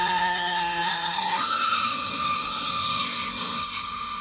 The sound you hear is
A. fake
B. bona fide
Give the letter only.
A